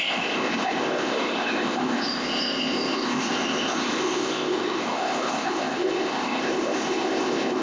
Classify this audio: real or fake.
fake